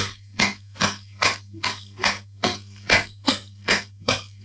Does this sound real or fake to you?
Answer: fake